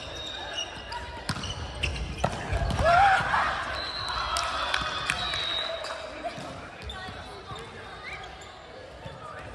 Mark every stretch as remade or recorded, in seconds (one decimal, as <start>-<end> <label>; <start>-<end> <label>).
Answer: 0.0-9.5 recorded